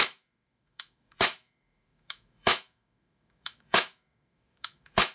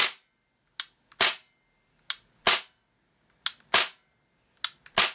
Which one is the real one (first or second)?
second